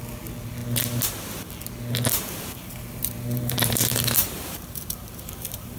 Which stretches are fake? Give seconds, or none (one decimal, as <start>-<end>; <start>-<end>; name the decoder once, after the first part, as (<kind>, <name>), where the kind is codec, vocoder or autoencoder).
2.1-5.8 (vocoder, BigVGAN v2)